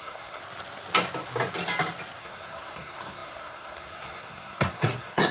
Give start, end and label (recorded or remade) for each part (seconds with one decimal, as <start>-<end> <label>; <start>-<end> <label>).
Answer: 0.0-0.4 remade; 0.4-2.2 recorded; 2.2-5.3 remade